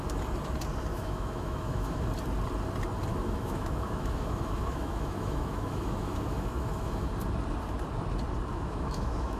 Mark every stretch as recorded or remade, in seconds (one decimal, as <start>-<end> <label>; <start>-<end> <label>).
0.0-0.9 recorded; 0.9-2.0 remade; 2.0-3.1 recorded; 3.1-7.1 remade; 7.1-8.5 recorded; 8.5-9.4 remade